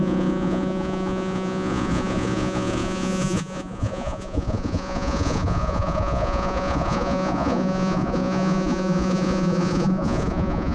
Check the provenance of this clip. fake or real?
fake